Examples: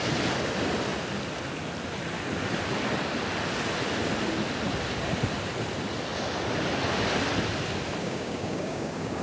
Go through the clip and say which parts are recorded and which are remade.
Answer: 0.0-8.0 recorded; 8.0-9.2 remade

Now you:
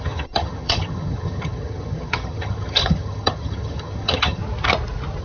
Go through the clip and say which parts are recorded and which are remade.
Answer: 0.0-4.4 remade; 4.4-5.2 recorded

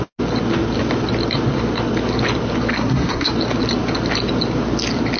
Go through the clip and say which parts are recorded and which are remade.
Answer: 0.0-2.7 recorded; 2.7-3.3 remade; 3.3-5.2 recorded

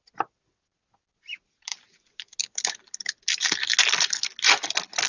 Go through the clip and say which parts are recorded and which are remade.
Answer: 0.0-5.1 recorded

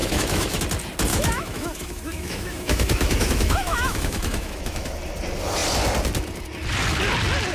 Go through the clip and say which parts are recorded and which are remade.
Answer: 0.0-0.6 remade; 0.6-1.1 recorded; 1.1-4.9 remade; 4.9-7.5 recorded